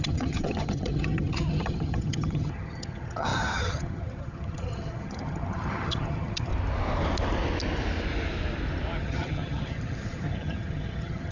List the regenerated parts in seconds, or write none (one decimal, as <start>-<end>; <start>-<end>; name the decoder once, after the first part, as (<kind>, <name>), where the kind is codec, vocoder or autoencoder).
0.0-6.5 (vocoder, HiFi-GAN); 9.0-11.3